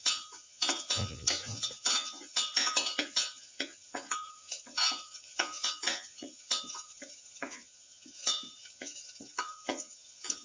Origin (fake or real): fake